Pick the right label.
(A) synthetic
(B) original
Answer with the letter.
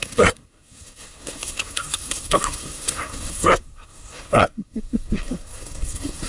A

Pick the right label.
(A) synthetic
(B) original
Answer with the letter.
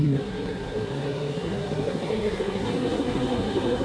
A